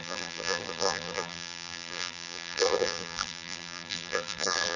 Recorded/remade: remade